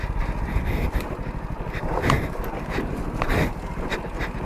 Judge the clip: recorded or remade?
recorded